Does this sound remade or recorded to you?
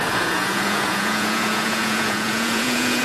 remade